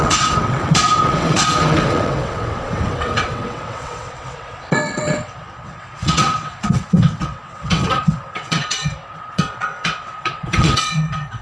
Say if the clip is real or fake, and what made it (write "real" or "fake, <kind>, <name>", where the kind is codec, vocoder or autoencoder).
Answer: fake, vocoder, WaveNeXt